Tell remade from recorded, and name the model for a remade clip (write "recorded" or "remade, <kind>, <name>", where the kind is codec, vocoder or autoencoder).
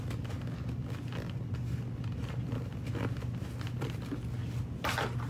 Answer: recorded